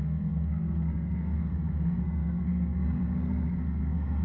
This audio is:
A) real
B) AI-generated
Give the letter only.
B